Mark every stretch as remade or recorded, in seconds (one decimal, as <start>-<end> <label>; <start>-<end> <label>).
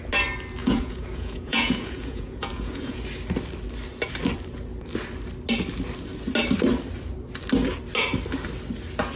0.0-0.6 recorded; 0.6-3.0 remade; 3.0-9.2 recorded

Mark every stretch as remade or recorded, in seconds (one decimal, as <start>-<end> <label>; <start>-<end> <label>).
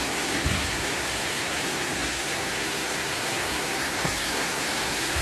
0.0-5.2 remade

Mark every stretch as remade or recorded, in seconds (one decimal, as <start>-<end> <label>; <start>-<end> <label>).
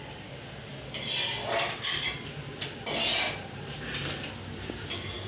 0.0-5.3 recorded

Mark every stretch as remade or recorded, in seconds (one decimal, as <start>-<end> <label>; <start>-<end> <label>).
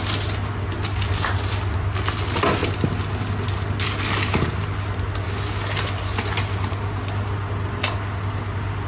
0.0-8.9 recorded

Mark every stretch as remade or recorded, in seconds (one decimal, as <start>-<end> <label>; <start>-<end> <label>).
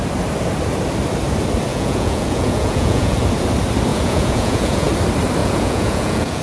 0.0-1.7 recorded; 1.7-3.2 remade; 3.2-3.9 recorded; 3.9-4.9 remade; 4.9-5.4 recorded; 5.4-6.4 remade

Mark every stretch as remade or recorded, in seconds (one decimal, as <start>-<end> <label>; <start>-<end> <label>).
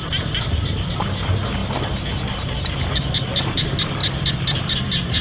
0.0-5.2 recorded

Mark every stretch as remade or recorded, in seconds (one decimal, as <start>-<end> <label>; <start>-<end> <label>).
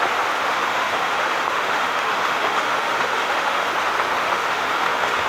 0.0-0.5 recorded; 0.5-3.7 remade; 3.7-4.2 recorded; 4.2-5.3 remade